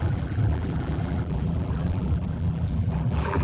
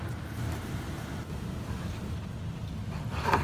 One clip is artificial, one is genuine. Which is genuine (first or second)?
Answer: second